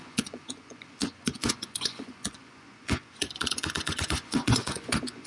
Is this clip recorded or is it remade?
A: remade